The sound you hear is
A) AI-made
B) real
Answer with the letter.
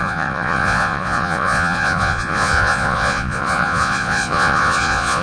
A